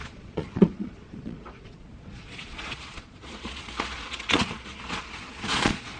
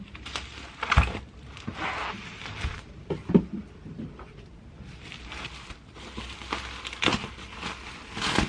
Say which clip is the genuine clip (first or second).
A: second